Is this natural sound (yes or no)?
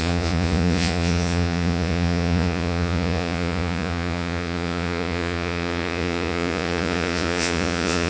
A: no